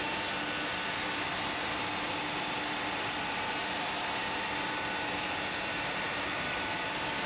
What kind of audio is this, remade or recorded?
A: recorded